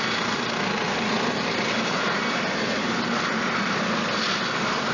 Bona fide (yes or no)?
yes